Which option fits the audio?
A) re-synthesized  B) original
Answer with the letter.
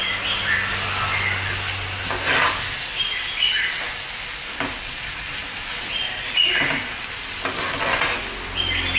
B